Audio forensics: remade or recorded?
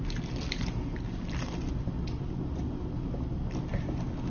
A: recorded